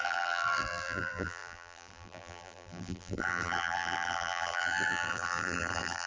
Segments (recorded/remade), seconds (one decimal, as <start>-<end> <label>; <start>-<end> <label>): 0.0-6.1 remade

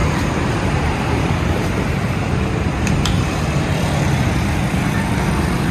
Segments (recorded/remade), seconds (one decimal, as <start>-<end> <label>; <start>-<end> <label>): 0.0-3.4 remade; 3.4-5.7 recorded

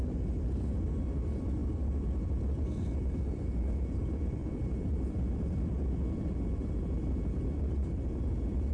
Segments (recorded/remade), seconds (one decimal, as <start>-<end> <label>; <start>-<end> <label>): 0.0-8.7 remade

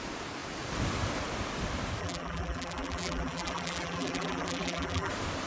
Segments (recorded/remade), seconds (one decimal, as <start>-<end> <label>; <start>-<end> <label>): 0.0-2.0 recorded; 2.0-5.1 remade; 5.1-5.5 recorded

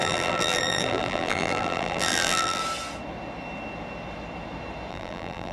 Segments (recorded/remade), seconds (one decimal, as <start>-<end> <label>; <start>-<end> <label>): 0.0-2.6 remade; 2.6-4.9 recorded; 4.9-5.5 remade